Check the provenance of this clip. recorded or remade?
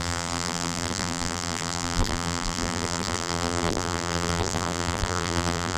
remade